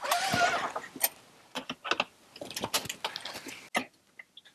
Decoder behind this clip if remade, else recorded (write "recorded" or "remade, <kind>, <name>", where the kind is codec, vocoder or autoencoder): recorded